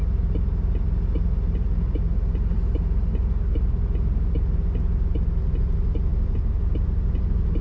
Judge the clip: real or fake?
real